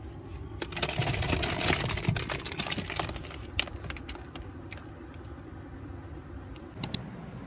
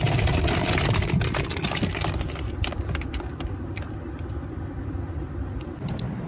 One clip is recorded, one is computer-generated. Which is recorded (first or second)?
first